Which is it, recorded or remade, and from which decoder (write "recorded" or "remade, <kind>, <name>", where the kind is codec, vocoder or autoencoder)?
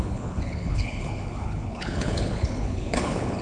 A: remade, codec, HILCodec